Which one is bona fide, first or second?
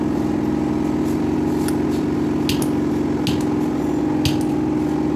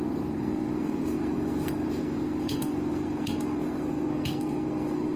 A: first